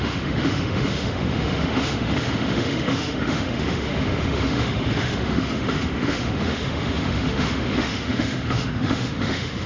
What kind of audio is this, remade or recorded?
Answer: remade